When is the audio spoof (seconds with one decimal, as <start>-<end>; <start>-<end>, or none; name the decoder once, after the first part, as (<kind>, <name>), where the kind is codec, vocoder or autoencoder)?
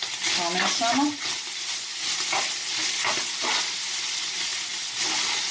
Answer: none